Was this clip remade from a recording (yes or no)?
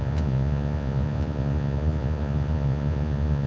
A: yes